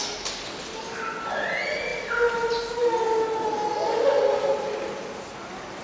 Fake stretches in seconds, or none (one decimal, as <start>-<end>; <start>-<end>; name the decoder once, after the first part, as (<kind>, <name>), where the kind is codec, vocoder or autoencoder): none